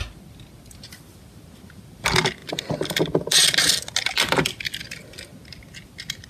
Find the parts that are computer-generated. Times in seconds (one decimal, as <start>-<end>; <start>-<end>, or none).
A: none